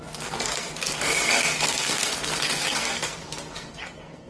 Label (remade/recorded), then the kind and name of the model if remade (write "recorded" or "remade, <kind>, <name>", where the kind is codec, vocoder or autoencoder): remade, codec, SNAC